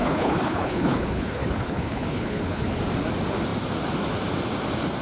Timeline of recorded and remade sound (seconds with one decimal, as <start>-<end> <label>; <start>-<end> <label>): 0.0-2.8 remade; 2.8-5.0 recorded